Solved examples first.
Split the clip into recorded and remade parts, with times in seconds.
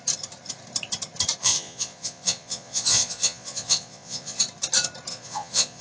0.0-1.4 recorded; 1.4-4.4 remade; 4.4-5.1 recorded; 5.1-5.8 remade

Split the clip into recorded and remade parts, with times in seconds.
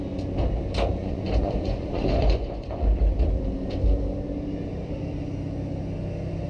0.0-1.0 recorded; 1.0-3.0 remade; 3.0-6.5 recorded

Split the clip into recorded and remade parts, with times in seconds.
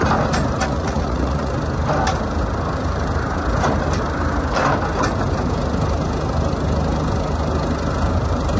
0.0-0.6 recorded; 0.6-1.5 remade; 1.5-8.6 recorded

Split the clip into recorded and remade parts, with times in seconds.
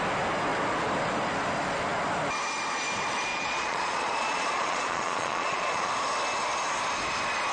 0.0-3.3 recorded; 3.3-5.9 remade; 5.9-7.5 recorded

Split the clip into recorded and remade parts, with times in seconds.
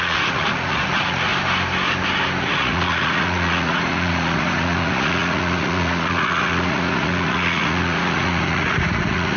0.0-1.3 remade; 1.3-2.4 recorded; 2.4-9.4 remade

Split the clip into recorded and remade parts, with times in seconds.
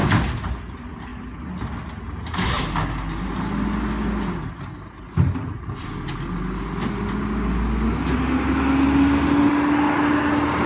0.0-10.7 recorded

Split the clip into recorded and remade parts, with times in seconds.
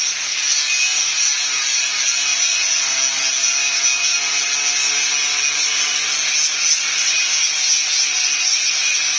0.0-2.3 recorded; 2.3-2.8 remade; 2.8-9.2 recorded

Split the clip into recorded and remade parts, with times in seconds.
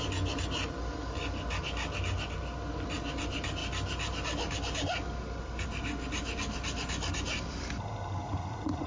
0.0-8.2 recorded; 8.2-8.9 remade